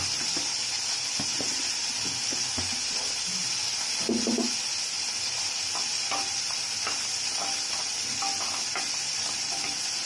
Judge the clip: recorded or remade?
recorded